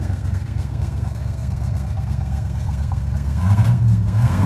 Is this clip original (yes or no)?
no